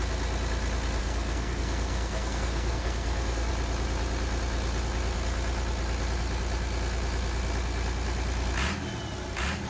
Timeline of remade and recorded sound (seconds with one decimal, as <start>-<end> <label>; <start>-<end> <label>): 0.0-1.0 recorded; 1.0-3.5 remade; 3.5-9.7 recorded